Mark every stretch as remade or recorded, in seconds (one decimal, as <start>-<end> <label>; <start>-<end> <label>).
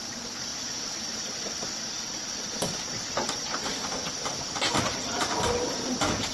0.0-6.3 recorded